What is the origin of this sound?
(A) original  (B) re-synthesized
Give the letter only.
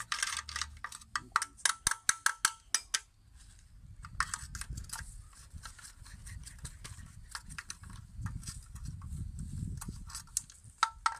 A